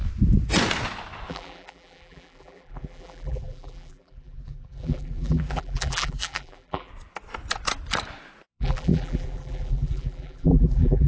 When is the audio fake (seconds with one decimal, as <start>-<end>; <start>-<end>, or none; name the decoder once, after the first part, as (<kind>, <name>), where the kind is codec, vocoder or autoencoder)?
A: 1.3-6.9 (vocoder, BigVGAN v2); 8.5-11.1